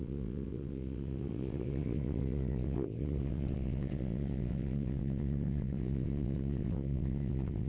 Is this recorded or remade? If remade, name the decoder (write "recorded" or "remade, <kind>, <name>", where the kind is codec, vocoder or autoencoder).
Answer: remade, vocoder, WaveNeXt